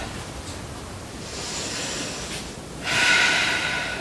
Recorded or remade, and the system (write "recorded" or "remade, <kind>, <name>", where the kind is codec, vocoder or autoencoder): recorded